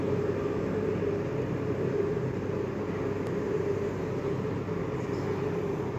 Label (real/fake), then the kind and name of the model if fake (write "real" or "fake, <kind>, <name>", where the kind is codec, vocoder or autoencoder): real